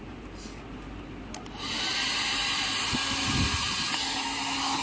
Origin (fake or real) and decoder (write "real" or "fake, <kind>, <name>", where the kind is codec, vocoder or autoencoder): real